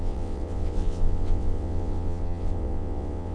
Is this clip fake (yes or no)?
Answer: yes